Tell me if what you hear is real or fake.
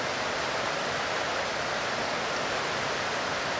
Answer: real